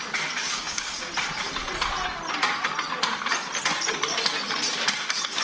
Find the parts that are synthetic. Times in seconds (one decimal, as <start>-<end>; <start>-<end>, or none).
0.4-1.1